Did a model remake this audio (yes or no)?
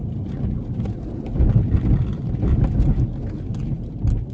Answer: no